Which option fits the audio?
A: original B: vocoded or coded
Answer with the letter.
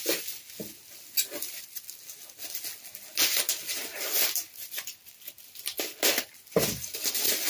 A